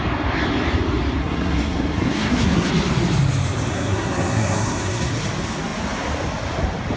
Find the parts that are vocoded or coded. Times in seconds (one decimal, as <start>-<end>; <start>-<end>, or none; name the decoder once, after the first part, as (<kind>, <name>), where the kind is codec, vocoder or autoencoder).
1.2-2.7 (codec, SNAC); 3.7-5.1